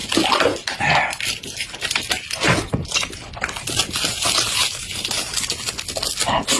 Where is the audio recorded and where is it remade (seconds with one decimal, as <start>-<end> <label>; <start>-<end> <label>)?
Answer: 0.0-6.6 recorded